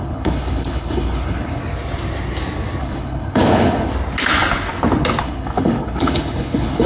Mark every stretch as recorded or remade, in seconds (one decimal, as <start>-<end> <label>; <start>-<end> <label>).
0.0-1.6 remade; 1.6-2.8 recorded; 2.8-3.9 remade; 3.9-5.2 recorded; 5.2-6.9 remade